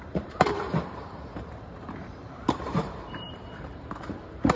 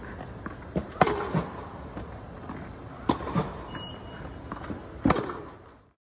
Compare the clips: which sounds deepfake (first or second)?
first